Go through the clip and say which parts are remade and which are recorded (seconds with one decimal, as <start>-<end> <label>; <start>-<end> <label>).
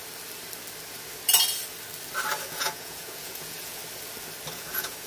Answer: 0.0-2.5 recorded; 2.5-3.8 remade; 3.8-4.5 recorded; 4.5-5.1 remade